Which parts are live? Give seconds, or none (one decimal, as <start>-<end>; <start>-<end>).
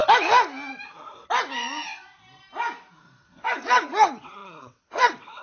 0.0-3.2